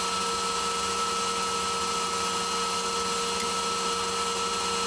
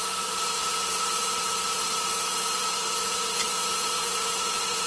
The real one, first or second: first